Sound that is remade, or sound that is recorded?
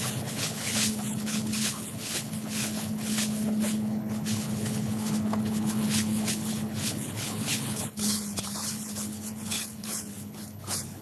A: remade